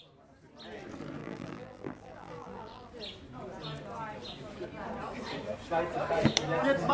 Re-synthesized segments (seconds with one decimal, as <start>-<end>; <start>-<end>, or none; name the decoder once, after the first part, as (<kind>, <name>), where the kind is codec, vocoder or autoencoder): 1.2-2.9 (vocoder, BigVGAN v2)